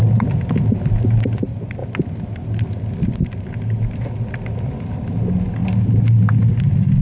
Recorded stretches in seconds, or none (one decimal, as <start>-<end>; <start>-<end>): 0.0-7.0